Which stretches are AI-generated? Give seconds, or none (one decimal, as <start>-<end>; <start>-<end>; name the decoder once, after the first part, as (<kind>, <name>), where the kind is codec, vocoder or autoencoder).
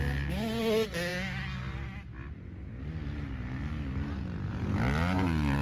none